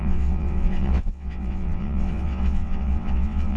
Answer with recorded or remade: remade